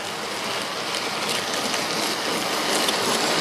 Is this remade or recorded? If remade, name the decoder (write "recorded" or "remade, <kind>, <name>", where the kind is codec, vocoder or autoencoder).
recorded